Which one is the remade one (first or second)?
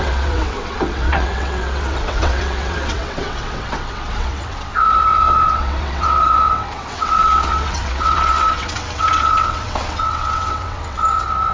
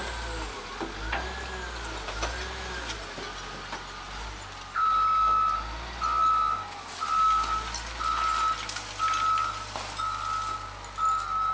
first